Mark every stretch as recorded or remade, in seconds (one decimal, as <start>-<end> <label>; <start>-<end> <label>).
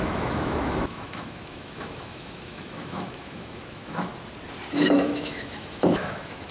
0.0-4.1 remade; 4.1-4.7 recorded; 4.7-6.5 remade